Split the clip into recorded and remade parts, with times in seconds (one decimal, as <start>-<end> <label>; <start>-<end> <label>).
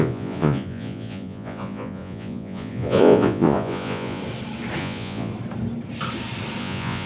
0.0-4.2 remade; 4.2-4.8 recorded; 4.8-5.3 remade; 5.3-6.6 recorded; 6.6-7.1 remade